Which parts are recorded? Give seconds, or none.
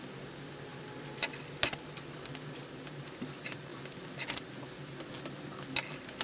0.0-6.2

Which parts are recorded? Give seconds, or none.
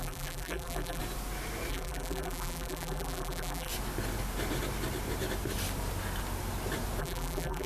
1.0-1.7; 3.7-7.0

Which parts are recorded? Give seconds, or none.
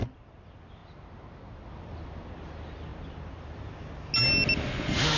0.0-0.8; 1.6-2.9; 3.4-5.2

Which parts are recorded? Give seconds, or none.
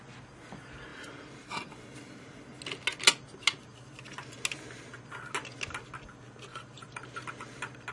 0.0-6.5; 7.2-7.9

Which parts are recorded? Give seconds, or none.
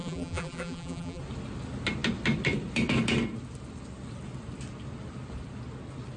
1.2-6.2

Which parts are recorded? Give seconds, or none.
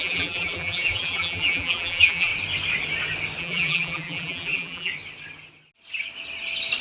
2.3-3.4; 4.9-6.8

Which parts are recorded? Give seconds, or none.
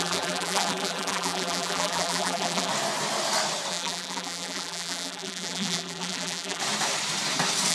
2.7-3.7; 6.6-7.7